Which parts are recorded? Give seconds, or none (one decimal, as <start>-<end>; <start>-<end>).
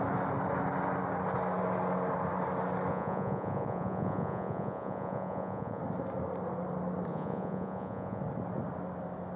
0.0-2.9; 5.8-7.1; 8.2-9.4